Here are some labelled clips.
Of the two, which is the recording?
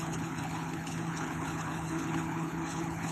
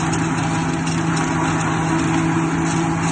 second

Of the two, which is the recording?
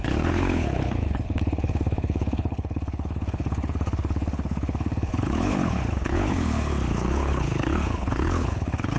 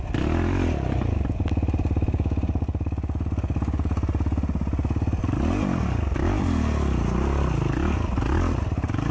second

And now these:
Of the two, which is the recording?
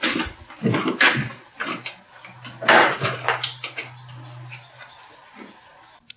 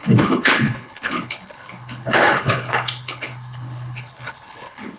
first